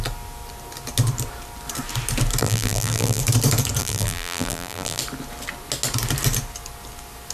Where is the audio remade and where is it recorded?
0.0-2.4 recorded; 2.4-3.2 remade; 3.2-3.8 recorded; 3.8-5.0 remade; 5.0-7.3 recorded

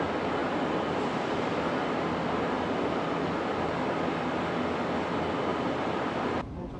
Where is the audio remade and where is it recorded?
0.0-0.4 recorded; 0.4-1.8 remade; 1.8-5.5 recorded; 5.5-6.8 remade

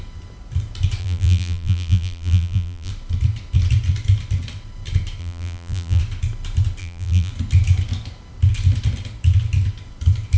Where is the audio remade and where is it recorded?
0.0-1.0 recorded; 1.0-2.9 remade; 2.9-5.2 recorded; 5.2-6.0 remade; 6.0-6.8 recorded; 6.8-7.3 remade; 7.3-10.4 recorded

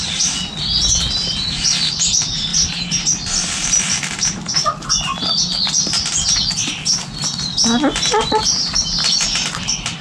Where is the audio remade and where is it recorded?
0.0-2.5 recorded; 2.5-4.9 remade; 4.9-10.0 recorded

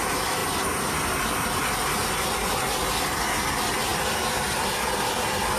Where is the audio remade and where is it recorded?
0.0-0.4 recorded; 0.4-1.3 remade; 1.3-2.0 recorded; 2.0-2.6 remade; 2.6-5.6 recorded

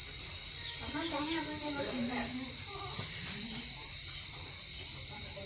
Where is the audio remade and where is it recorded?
0.0-1.8 recorded; 1.8-5.5 remade

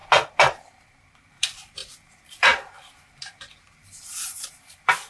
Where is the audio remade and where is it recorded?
0.0-1.2 recorded; 1.2-5.1 remade